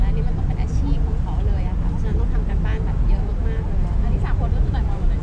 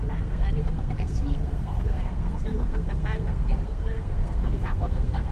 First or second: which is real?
first